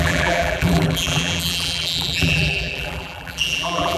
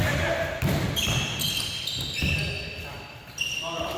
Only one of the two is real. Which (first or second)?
second